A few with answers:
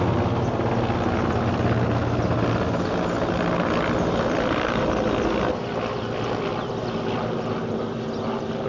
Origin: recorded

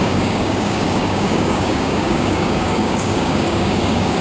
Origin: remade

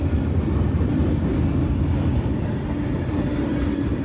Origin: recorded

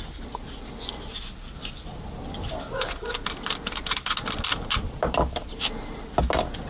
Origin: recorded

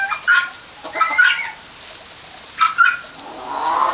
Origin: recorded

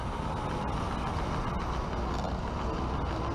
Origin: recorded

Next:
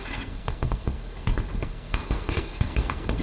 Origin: remade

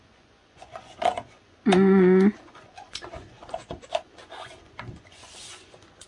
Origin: remade